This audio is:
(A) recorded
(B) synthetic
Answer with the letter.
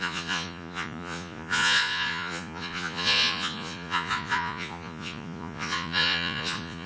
B